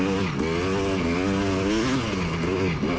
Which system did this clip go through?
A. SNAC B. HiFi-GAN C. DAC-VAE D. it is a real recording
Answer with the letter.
D